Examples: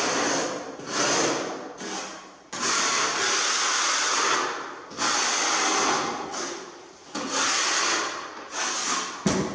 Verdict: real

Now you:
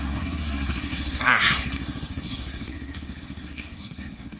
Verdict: fake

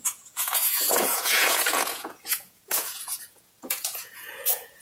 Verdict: fake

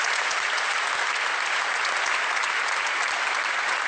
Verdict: real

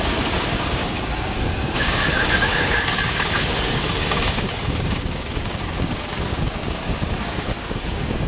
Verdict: fake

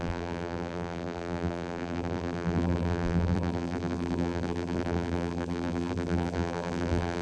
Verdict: fake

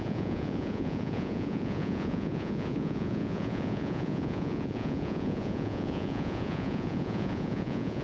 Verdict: fake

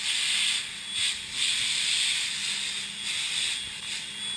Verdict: real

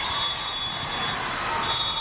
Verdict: real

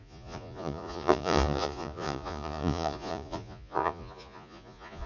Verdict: fake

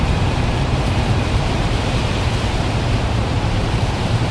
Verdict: fake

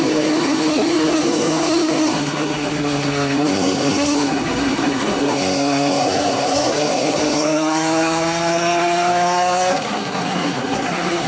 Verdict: fake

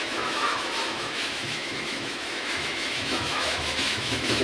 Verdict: fake